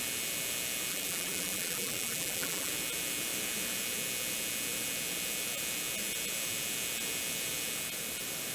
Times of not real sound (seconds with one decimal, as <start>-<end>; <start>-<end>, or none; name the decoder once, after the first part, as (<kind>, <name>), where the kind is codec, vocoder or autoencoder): 0.9-2.7 (vocoder, BigVGAN v2)